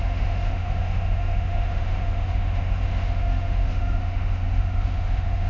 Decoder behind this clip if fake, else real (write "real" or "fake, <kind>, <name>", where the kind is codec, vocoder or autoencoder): fake, autoencoder, DAC-VAE